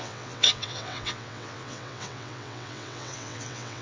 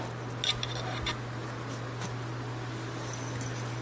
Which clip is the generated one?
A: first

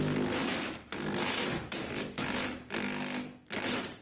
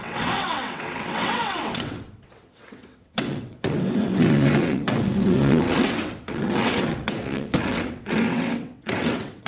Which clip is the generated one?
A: second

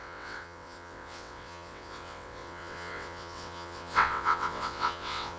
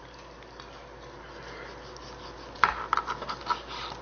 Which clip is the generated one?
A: first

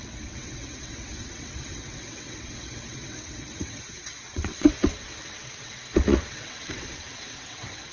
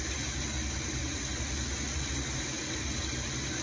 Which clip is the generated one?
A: first